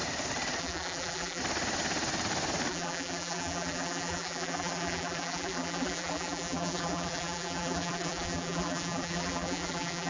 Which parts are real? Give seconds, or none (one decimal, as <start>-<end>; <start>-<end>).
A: 0.0-0.6; 1.4-2.7